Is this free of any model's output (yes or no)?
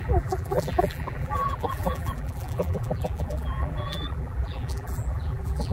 no